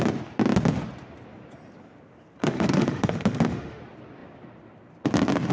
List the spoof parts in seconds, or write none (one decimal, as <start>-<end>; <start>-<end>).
2.4-3.8